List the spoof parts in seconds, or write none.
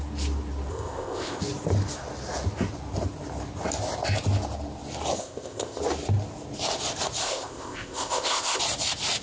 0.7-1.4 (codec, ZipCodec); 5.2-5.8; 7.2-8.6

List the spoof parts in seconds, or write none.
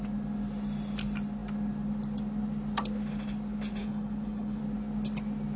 3.8-4.6 (codec, HILCodec)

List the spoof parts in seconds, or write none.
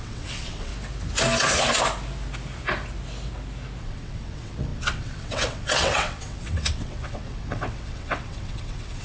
0.0-0.7 (vocoder, WaveNeXt); 3.8-9.0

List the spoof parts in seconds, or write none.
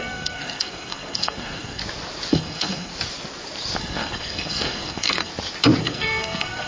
0.0-1.8 (codec, SNAC); 2.3-2.9; 3.8-5.3; 5.8-6.7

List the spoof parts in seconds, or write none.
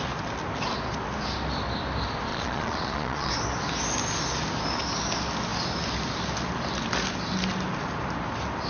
2.3-3.3 (vocoder, Vocos)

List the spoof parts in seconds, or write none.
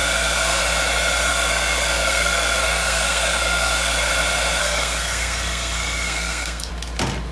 0.0-0.6 (codec, SNAC); 1.3-4.1; 4.6-6.7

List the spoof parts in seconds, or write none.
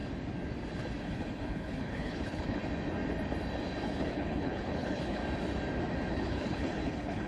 1.0-2.6 (codec, HILCodec); 4.0-5.2; 6.1-7.3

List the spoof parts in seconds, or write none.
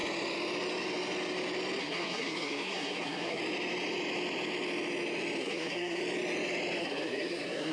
1.8-3.4 (codec, SNAC); 5.4-6.0; 6.8-7.7